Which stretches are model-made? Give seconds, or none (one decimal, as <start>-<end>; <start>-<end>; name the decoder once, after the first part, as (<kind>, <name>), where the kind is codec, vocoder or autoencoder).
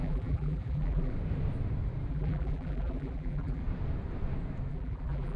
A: 0.0-1.1 (vocoder, BigVGAN v2); 2.1-3.6; 4.7-5.4